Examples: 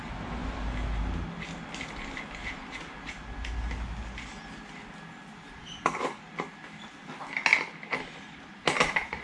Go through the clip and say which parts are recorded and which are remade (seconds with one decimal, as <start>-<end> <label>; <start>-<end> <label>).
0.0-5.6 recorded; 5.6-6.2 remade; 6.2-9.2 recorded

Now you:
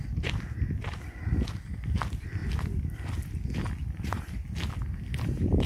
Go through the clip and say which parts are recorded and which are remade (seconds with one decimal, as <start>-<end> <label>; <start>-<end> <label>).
0.0-5.7 recorded

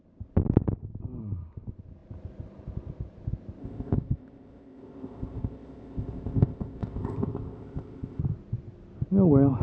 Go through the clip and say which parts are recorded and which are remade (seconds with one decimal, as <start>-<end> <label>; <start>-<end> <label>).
0.0-3.6 recorded; 3.6-8.2 remade; 8.2-9.6 recorded

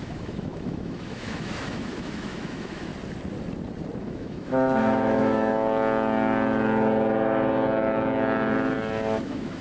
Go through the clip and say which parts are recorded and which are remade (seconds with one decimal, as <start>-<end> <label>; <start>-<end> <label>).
0.0-2.9 remade; 2.9-4.0 recorded; 4.0-5.5 remade; 5.5-9.2 recorded; 9.2-9.6 remade

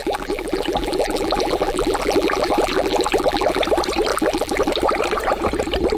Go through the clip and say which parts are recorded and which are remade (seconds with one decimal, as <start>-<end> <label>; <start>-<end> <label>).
0.0-3.6 remade; 3.6-4.1 recorded; 4.1-4.7 remade; 4.7-6.0 recorded